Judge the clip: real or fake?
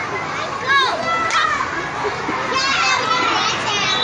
real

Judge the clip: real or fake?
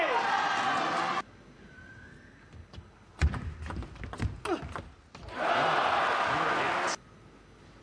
real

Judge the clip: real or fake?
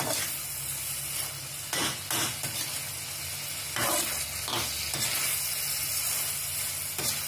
real